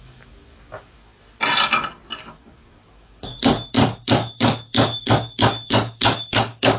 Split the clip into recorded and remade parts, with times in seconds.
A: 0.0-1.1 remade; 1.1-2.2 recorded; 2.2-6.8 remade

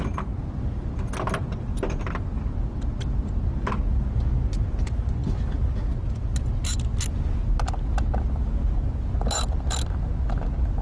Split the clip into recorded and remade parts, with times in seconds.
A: 0.0-10.8 recorded